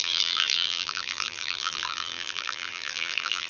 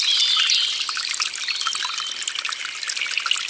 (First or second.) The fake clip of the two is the first